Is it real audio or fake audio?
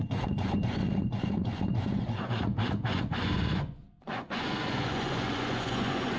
fake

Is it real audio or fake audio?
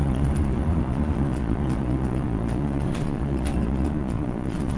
fake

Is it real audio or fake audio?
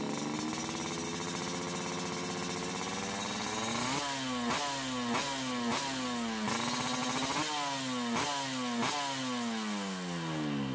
real